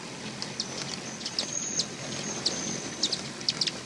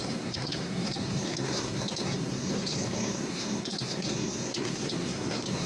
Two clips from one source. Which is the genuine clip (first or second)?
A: first